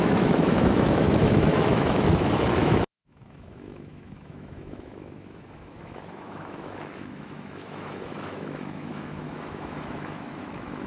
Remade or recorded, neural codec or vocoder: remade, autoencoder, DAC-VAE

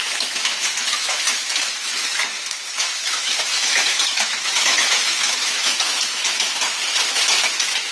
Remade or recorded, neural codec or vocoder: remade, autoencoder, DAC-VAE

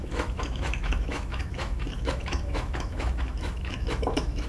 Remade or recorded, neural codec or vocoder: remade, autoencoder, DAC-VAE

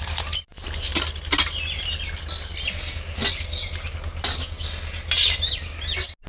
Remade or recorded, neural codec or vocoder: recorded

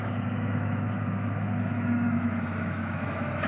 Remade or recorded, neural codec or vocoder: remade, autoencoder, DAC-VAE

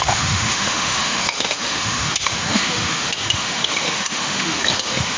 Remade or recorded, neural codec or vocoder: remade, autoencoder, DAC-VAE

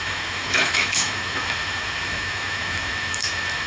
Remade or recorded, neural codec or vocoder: remade, autoencoder, DAC-VAE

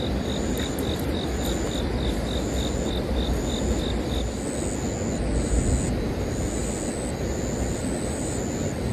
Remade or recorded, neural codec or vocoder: recorded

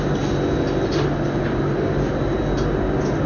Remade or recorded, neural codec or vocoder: recorded